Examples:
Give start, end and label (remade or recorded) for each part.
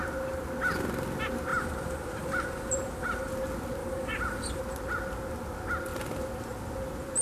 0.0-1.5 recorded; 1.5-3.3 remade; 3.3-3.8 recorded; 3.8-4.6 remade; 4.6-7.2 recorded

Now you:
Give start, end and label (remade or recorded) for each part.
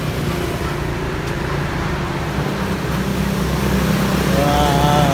0.0-3.1 recorded; 3.1-3.9 remade; 3.9-5.1 recorded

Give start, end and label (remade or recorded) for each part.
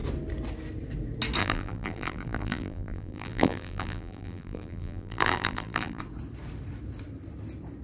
0.0-1.4 recorded; 1.4-6.0 remade; 6.0-7.8 recorded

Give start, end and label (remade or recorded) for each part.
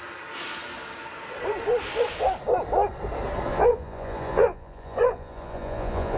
0.0-3.5 recorded; 3.5-6.2 remade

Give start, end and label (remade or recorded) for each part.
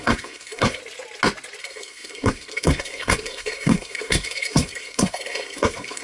0.0-0.8 remade; 0.8-1.6 recorded; 1.6-6.0 remade